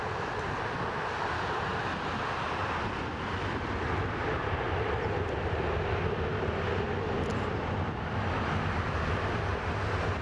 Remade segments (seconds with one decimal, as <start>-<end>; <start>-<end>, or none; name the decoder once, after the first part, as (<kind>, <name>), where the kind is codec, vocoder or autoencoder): 1.7-5.2 (vocoder, BigVGAN v2)